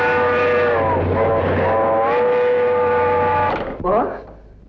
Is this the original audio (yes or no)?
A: yes